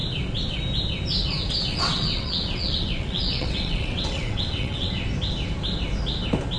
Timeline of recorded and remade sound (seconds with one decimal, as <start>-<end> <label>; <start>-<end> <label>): 0.0-1.7 recorded; 1.7-4.9 remade; 4.9-6.6 recorded